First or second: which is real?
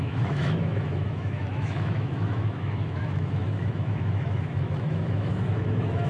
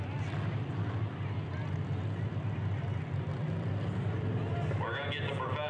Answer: second